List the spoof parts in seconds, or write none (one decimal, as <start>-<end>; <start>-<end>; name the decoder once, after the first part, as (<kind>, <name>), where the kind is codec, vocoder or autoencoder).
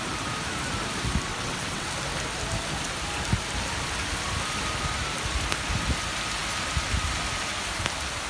1.3-1.9 (vocoder, WaveNeXt)